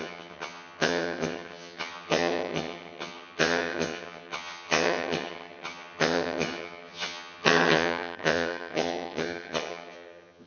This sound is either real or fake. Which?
fake